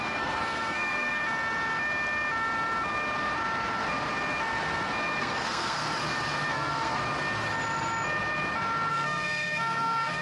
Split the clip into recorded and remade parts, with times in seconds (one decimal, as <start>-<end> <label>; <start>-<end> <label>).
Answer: 0.0-1.2 remade; 1.2-5.2 recorded; 5.2-5.8 remade; 5.8-6.5 recorded; 6.5-7.0 remade; 7.0-8.9 recorded; 8.9-10.2 remade